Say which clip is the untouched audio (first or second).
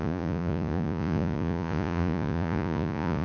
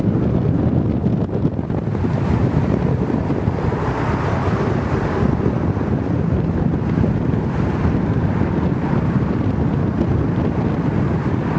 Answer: second